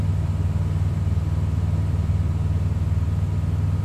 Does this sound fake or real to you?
real